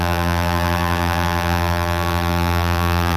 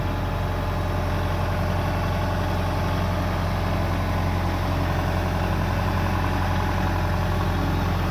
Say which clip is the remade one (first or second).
first